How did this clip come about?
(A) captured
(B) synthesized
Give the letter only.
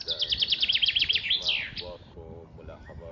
B